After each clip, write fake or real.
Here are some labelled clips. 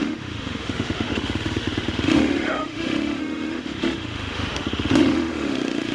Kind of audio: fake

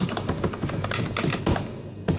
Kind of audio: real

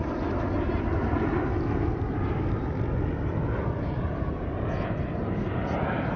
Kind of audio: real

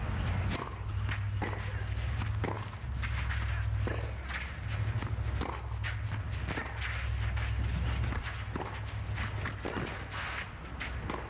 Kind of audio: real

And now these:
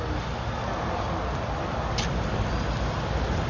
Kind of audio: real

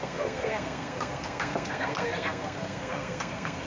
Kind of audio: fake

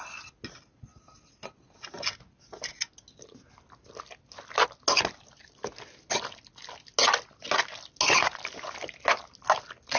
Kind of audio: real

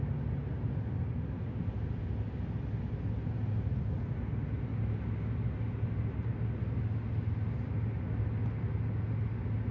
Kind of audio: real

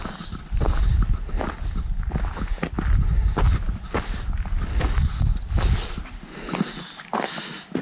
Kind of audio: real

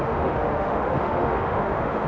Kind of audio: fake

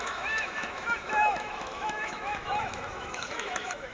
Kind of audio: fake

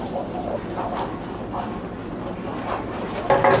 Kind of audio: real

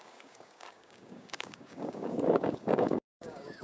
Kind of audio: fake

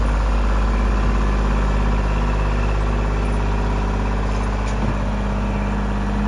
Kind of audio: real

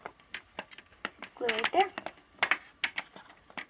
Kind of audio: real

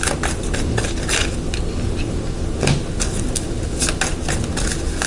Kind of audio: real